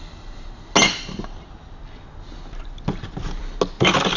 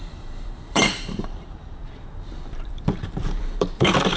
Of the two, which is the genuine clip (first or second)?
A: first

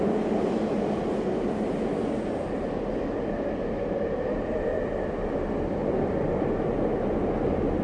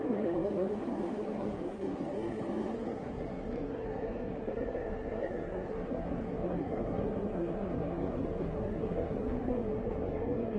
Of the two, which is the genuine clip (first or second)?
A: first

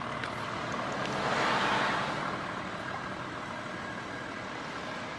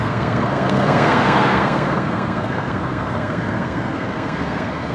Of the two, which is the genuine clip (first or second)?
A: first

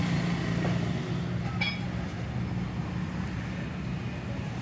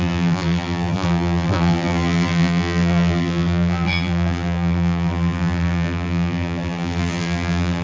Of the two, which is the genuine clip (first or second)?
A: first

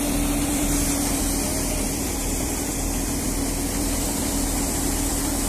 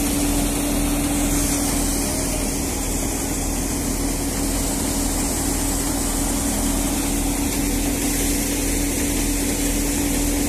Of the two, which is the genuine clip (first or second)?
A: second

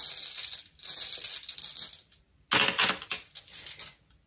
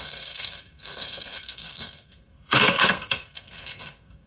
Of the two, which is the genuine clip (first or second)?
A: first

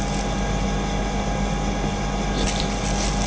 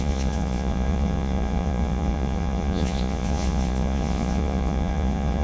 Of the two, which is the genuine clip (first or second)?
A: first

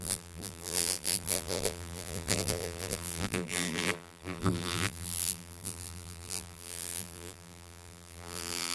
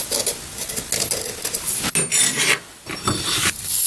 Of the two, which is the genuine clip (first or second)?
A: second